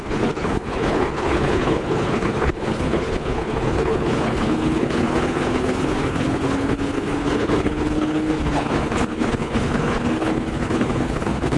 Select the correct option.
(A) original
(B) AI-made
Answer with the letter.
B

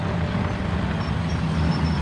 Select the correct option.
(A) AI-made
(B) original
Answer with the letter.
B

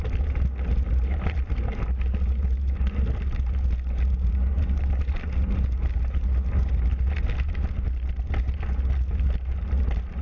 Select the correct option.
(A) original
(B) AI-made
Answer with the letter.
A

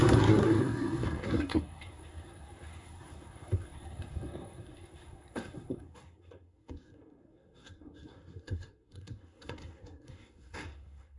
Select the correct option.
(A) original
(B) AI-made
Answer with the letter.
B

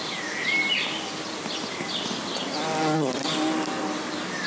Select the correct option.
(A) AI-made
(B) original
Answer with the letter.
B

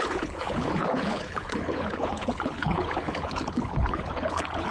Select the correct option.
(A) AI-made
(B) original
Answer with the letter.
A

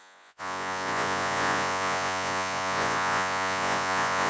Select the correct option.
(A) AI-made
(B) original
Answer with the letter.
A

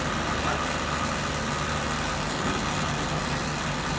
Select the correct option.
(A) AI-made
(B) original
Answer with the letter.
B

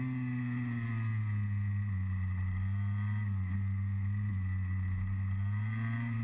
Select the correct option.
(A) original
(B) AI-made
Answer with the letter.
A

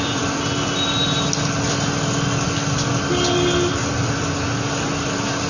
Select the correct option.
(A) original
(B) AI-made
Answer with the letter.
A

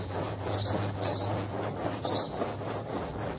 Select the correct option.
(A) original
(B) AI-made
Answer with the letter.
B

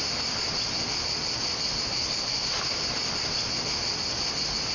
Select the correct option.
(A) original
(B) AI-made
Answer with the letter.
A